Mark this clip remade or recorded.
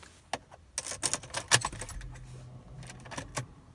recorded